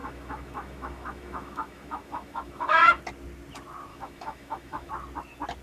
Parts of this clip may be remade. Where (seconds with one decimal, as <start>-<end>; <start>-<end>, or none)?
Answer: 0.0-3.0; 3.9-4.9